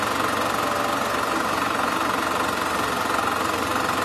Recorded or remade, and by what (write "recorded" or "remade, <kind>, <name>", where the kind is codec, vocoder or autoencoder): recorded